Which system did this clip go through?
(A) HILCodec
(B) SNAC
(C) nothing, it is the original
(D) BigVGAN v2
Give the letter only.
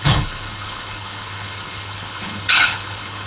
A